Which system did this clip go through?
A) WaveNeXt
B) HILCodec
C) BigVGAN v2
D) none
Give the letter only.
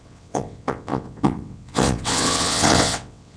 A